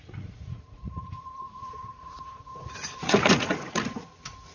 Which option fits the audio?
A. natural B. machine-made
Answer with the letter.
B